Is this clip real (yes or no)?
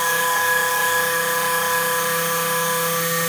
no